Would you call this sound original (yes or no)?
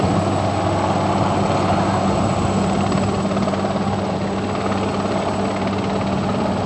yes